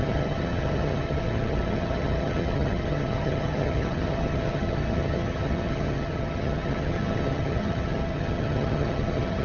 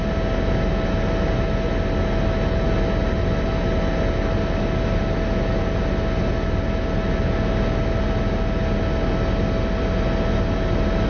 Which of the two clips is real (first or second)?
second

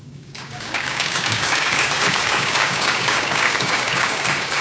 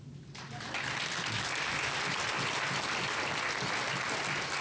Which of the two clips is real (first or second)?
second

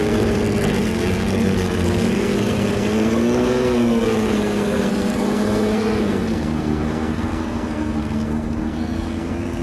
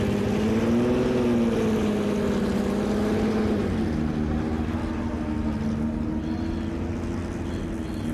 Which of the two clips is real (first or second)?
second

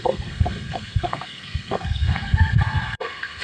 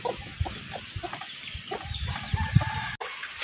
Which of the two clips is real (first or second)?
second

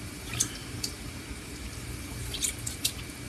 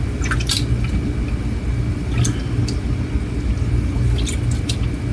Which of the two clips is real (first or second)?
second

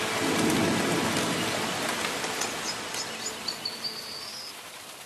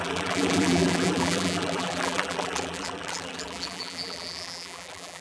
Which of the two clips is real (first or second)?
first